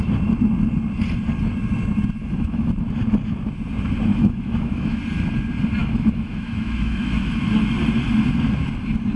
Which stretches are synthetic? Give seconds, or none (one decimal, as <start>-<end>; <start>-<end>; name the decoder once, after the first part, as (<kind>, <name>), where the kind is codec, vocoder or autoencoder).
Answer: 2.2-2.7 (autoencoder, DAC-VAE); 4.1-5.0; 5.8-7.4